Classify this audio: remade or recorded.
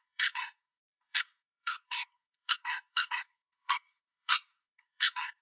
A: remade